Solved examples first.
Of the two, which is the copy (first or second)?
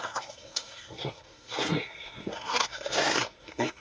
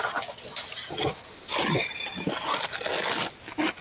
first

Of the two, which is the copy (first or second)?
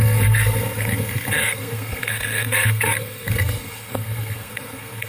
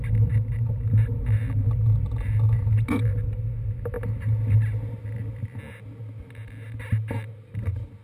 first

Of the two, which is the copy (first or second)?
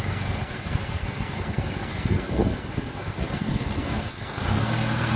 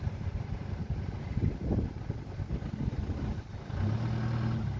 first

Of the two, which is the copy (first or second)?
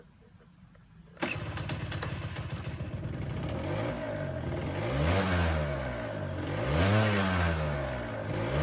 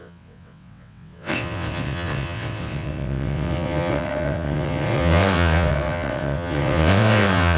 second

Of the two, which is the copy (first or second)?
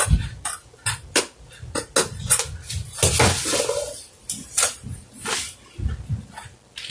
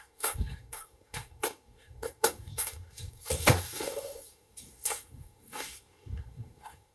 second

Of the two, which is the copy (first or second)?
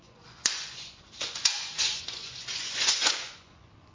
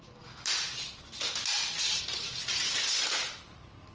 first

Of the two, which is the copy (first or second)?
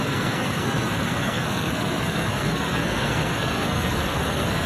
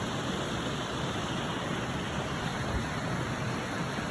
first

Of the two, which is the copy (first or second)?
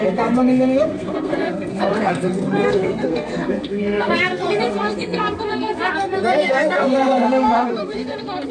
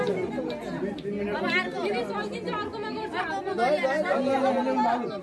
first